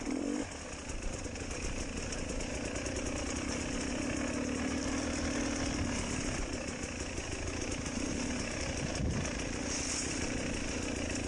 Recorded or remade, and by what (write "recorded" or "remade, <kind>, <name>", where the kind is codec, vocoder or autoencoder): recorded